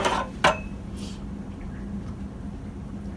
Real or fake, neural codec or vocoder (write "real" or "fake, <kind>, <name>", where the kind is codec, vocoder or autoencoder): real